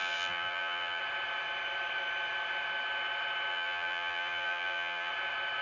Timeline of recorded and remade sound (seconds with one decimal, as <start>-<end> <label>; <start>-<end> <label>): 0.0-1.0 remade; 1.0-3.5 recorded; 3.5-5.1 remade; 5.1-5.6 recorded